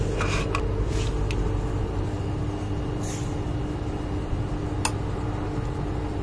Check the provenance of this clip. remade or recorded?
recorded